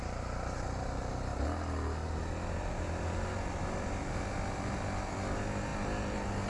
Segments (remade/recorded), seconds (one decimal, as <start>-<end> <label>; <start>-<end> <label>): 0.0-6.5 recorded